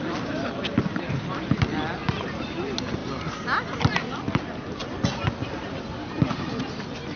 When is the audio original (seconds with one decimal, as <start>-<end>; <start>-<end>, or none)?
0.0-7.2